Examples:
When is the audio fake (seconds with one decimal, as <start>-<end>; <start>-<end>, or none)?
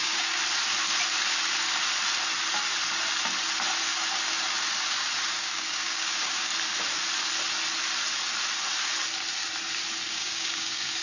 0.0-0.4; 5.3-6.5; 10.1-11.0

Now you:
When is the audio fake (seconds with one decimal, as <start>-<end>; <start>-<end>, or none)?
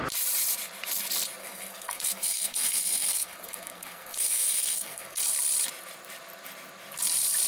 1.4-5.2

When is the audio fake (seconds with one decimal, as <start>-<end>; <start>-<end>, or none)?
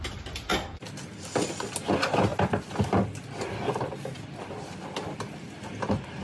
none